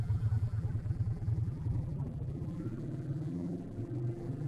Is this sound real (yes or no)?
no